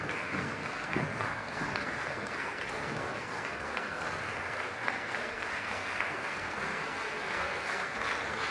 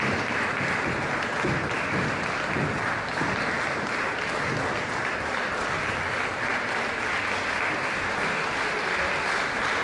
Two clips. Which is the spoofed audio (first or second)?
first